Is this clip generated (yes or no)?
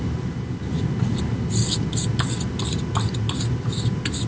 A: no